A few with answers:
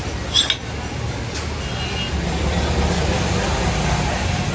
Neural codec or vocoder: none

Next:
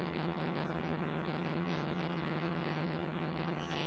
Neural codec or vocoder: vocoder, HiFi-GAN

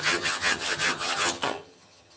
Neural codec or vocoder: vocoder, HiFi-GAN